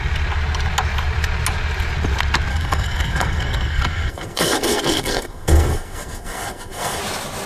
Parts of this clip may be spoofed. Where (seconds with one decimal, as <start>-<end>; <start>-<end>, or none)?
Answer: 2.5-7.0